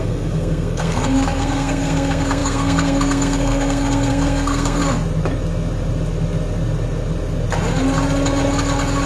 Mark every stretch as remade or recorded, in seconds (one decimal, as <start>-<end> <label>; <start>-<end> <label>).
0.0-4.8 remade; 4.8-9.1 recorded